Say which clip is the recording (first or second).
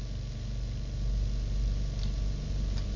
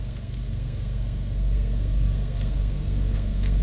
first